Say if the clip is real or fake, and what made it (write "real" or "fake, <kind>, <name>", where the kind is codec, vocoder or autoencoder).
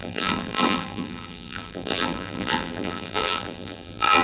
fake, vocoder, BigVGAN v2